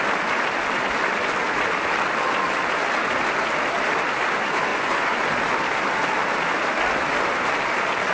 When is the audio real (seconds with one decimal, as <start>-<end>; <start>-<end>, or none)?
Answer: 0.0-4.7; 5.3-8.1